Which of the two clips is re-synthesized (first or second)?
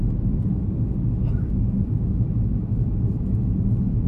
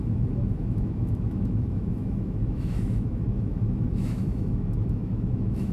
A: second